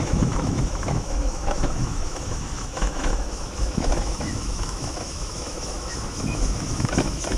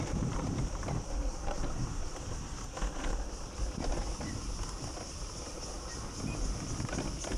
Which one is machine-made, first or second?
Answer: first